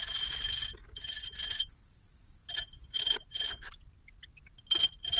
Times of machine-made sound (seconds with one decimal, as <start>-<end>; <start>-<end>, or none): none